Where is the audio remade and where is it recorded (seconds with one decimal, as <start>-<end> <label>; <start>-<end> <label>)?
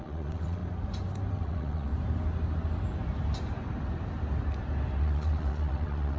0.0-0.6 remade; 0.6-1.3 recorded; 1.3-1.9 remade; 1.9-5.0 recorded; 5.0-6.2 remade